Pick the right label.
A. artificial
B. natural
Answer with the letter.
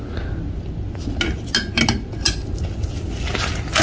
B